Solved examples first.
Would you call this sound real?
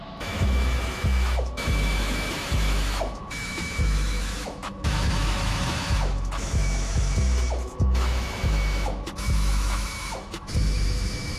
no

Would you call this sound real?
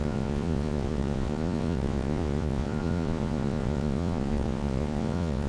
no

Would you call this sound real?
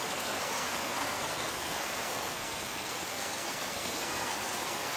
no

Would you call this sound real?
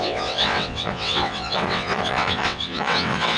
no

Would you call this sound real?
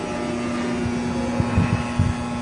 yes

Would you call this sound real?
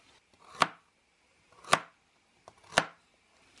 yes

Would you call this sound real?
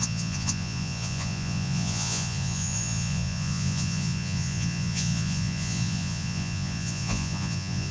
no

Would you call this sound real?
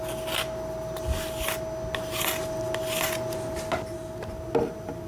yes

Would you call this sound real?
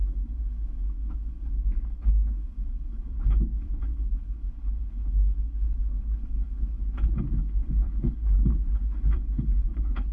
no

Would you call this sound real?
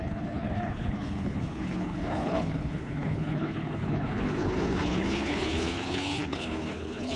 no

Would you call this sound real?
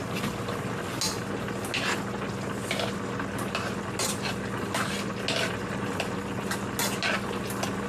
yes